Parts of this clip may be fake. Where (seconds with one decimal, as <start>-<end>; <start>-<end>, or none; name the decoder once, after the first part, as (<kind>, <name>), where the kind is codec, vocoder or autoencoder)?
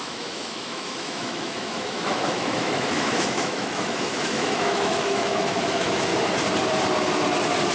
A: 0.0-6.1 (autoencoder, DAC-VAE)